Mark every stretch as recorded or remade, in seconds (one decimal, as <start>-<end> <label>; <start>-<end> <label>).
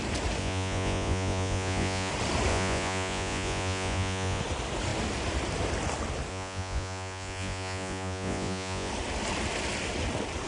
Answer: 0.0-0.4 recorded; 0.4-2.1 remade; 2.1-2.5 recorded; 2.5-4.4 remade; 4.4-6.3 recorded; 6.3-8.9 remade; 8.9-10.5 recorded